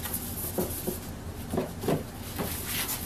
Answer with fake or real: real